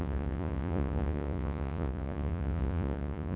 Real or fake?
fake